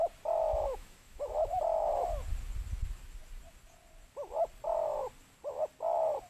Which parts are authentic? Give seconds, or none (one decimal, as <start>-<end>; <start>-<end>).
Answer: 0.0-0.4; 1.6-6.3